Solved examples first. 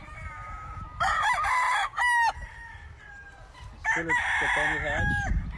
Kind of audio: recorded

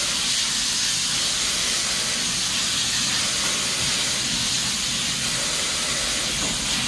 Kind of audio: recorded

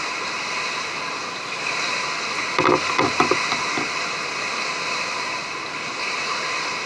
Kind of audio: recorded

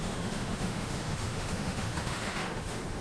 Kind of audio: remade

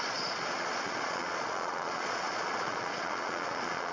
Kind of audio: remade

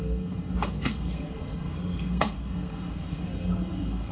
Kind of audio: remade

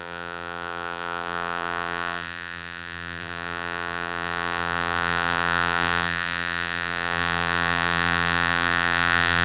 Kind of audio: remade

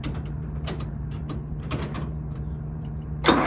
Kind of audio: remade